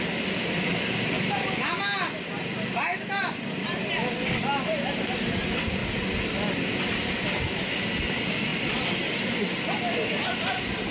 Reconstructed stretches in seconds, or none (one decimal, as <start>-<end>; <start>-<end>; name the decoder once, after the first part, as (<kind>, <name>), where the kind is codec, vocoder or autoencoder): none